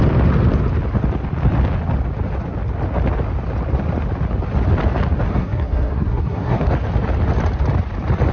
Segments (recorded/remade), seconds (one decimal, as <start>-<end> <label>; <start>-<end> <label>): 0.0-5.3 recorded; 5.3-6.7 remade; 6.7-8.3 recorded